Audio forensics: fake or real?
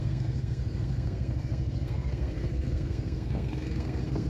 fake